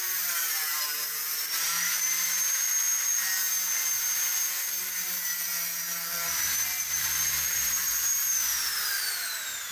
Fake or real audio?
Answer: fake